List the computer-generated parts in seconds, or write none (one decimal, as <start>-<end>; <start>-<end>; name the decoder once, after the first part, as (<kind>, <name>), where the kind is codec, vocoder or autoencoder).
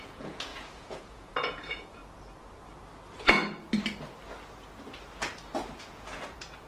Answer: 0.0-2.0 (vocoder, Vocos); 5.8-6.7